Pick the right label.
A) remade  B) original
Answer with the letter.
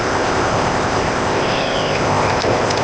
A